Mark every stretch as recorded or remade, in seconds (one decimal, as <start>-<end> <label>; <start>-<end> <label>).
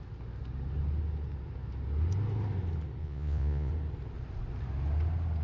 0.0-3.0 recorded; 3.0-3.7 remade; 3.7-5.4 recorded